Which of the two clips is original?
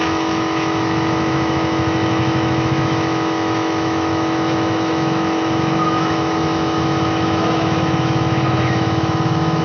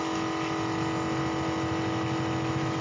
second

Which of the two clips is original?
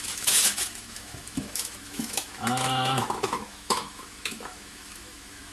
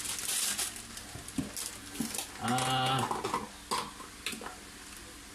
second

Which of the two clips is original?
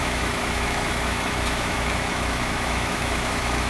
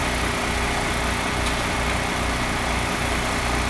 second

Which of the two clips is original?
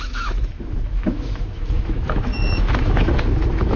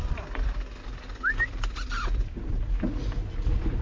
second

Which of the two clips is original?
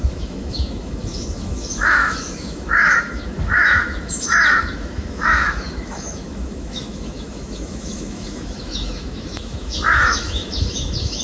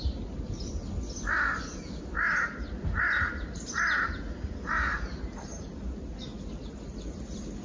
second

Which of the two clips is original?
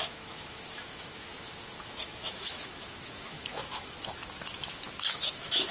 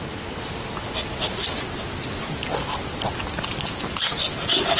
second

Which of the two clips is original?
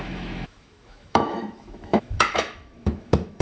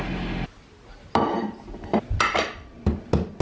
second